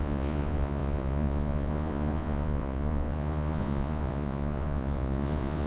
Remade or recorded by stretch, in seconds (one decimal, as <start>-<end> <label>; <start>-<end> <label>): 0.0-5.7 remade